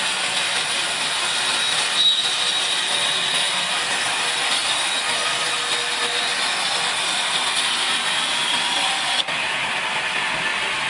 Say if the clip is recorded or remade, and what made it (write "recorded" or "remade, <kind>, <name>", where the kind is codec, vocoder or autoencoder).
recorded